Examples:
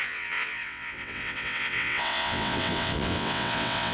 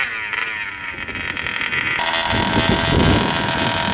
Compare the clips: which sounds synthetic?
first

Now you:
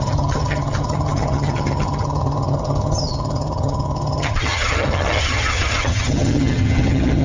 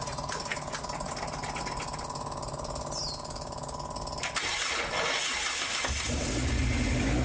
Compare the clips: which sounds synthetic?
first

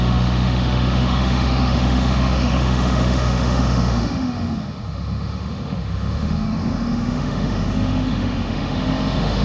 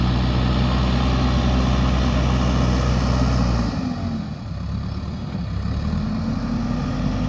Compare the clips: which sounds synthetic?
first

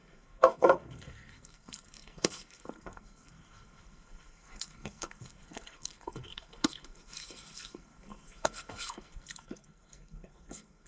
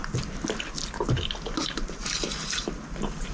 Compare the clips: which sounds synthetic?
first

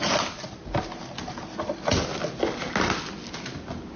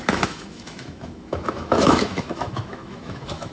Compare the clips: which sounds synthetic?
second